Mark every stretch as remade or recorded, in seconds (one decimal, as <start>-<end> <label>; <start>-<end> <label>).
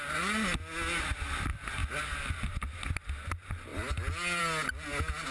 0.0-5.3 recorded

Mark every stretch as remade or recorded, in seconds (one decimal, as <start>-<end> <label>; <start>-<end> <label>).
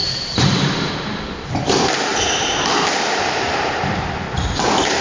0.0-0.9 remade; 0.9-2.1 recorded; 2.1-3.7 remade; 3.7-5.0 recorded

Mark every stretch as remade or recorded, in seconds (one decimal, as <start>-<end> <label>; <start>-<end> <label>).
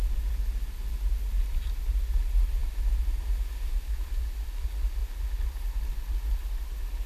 0.0-7.1 recorded